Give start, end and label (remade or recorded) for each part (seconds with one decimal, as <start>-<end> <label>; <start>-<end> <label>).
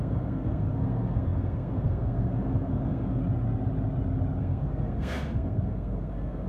0.0-3.2 remade; 3.2-4.4 recorded; 4.4-6.5 remade